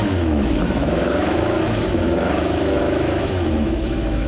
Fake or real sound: fake